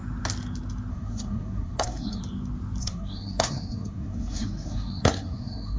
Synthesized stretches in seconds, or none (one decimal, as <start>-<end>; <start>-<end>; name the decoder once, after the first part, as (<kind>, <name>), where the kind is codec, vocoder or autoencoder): 0.9-2.2 (codec, SNAC); 2.8-5.8